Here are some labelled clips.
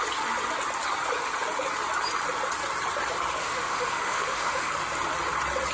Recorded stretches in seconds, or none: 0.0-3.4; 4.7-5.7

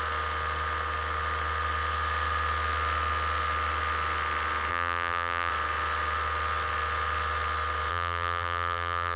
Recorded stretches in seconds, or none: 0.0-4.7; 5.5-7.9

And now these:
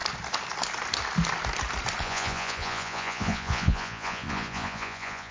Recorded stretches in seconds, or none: 0.0-2.0